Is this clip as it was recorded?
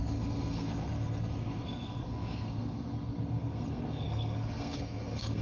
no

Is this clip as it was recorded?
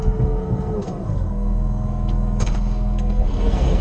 no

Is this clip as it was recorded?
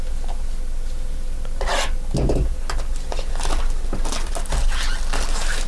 yes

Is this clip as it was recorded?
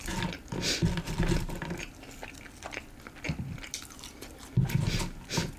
yes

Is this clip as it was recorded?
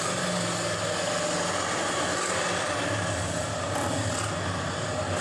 yes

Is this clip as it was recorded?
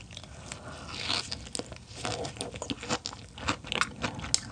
yes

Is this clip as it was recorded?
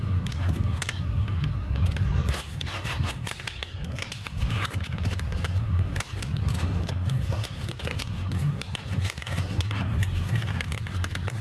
no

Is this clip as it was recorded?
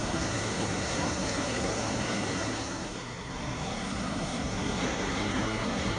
no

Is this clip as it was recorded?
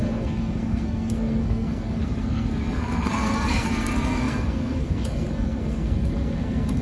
no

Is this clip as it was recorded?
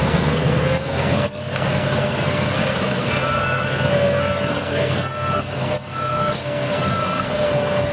no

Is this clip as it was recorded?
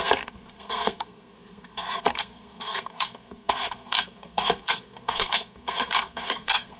no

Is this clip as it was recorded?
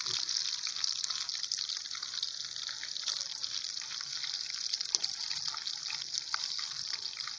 yes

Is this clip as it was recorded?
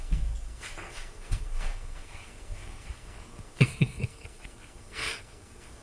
no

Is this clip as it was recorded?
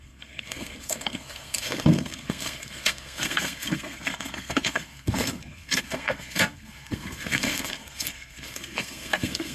no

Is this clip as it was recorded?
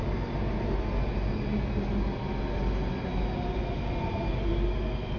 yes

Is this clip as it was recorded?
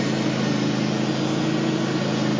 yes